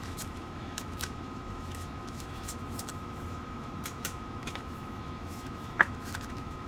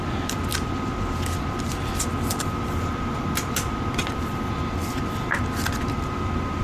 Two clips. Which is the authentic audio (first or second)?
second